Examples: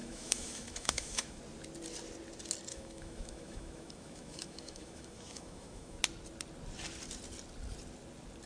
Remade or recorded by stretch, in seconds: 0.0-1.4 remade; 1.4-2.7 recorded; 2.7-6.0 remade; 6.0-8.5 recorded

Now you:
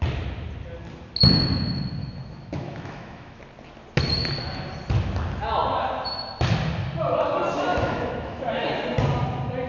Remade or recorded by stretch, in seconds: 0.0-2.0 recorded; 2.0-3.4 remade; 3.4-7.7 recorded; 7.7-8.7 remade; 8.7-9.7 recorded